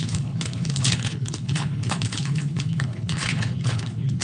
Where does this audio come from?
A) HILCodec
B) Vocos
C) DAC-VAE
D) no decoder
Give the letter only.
A